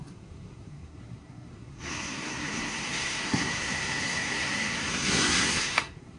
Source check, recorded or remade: remade